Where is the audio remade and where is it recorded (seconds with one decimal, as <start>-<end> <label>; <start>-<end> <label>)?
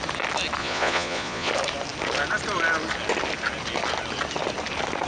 0.0-0.6 recorded; 0.6-1.5 remade; 1.5-5.1 recorded